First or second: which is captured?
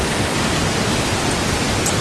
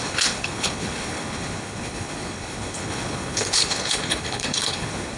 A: first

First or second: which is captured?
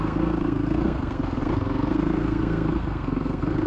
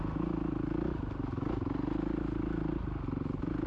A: second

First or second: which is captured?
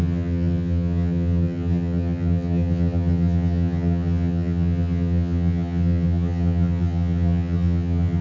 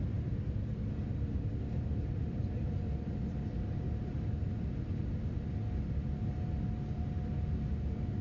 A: second